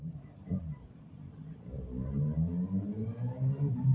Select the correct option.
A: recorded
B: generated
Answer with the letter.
B